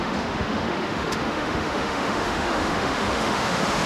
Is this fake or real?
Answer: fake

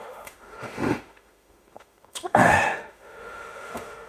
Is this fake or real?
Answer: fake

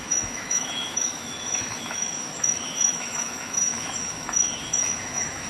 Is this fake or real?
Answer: fake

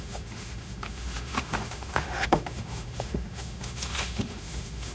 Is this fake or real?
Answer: fake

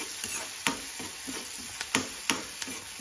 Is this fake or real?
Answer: real